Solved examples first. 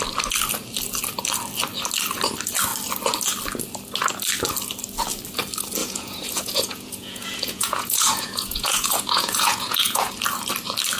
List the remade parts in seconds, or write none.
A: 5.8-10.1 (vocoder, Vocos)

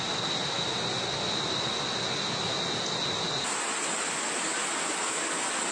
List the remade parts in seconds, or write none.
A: none

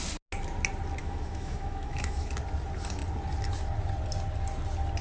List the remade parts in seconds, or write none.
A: 1.0-2.3 (autoencoder, DAC-VAE)

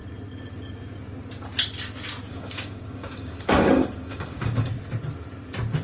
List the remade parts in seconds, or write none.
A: 2.3-4.7 (codec, DAC)

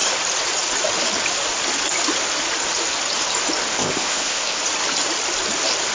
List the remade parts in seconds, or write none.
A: 3.7-4.6 (codec, ZipCodec)